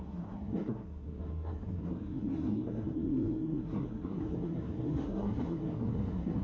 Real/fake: fake